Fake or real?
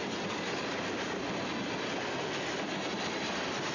real